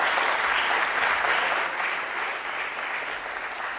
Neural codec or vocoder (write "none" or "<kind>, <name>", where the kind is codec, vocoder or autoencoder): none